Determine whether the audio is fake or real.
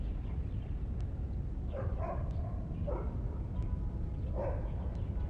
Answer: real